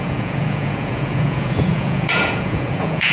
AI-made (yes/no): yes